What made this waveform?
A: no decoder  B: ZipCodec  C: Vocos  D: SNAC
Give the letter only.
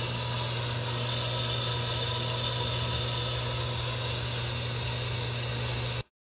A